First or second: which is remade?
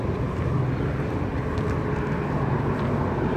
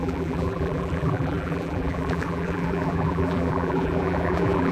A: second